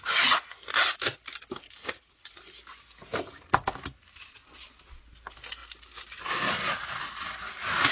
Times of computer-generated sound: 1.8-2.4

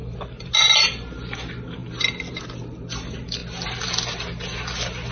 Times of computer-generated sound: none

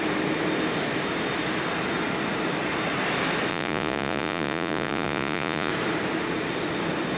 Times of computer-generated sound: 3.5-5.7

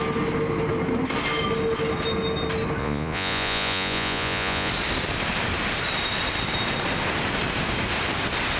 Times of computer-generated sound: 2.8-4.7